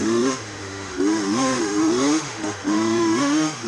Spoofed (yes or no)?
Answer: yes